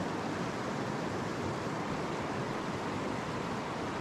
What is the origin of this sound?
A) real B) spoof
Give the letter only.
A